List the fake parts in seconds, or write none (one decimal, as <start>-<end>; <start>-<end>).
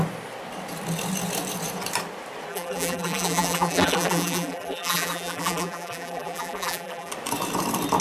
2.5-7.1